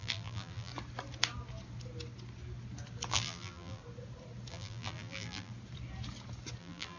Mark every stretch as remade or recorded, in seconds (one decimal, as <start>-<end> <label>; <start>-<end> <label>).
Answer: 0.0-0.7 remade; 0.7-3.1 recorded; 3.1-3.8 remade; 3.8-4.5 recorded; 4.5-5.5 remade; 5.5-6.6 recorded; 6.6-7.0 remade